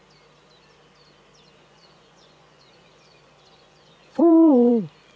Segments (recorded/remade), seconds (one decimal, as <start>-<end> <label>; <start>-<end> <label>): 0.0-1.6 recorded; 1.6-4.7 remade; 4.7-5.2 recorded